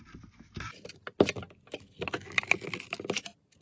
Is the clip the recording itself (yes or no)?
yes